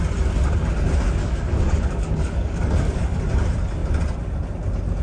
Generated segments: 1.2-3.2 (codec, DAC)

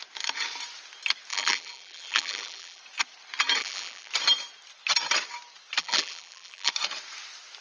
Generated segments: 1.3-2.8 (vocoder, BigVGAN v2); 3.6-4.1; 5.8-6.7

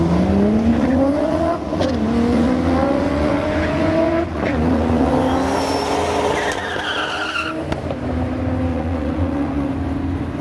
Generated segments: 0.7-1.9 (vocoder, Vocos); 2.3-5.1; 8.7-9.7

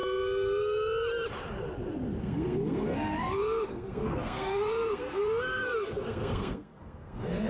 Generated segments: 2.2-7.5 (codec, SNAC)

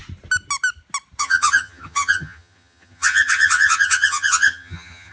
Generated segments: 1.2-5.1 (vocoder, HiFi-GAN)

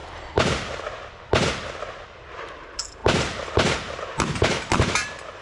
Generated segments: none

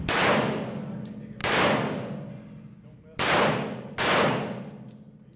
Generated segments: none